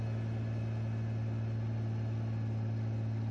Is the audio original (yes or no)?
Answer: yes